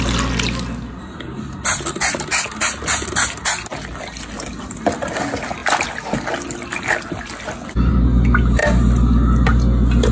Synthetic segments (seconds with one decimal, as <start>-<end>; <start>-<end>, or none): none